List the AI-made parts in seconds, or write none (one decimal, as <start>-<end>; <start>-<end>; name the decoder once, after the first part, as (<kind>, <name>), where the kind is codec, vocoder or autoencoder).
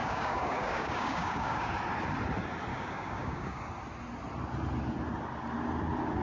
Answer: 0.0-1.7 (codec, DAC); 2.7-3.7